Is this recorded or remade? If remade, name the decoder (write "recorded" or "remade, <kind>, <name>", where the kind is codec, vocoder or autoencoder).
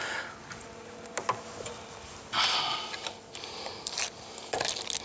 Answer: recorded